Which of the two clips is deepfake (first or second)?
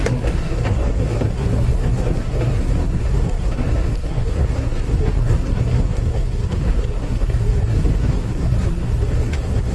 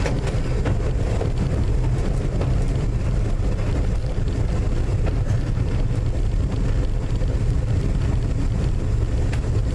first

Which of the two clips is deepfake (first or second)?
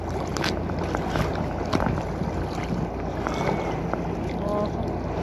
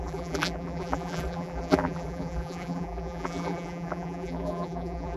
second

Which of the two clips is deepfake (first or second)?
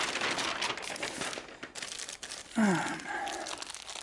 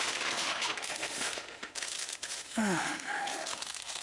second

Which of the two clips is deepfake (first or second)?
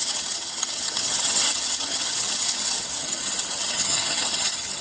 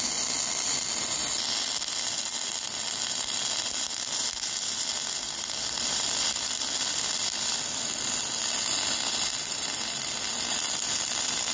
first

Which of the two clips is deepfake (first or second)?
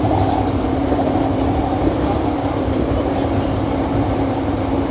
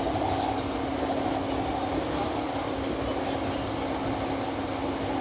first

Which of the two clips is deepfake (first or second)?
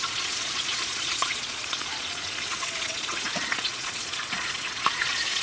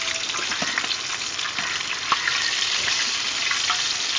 first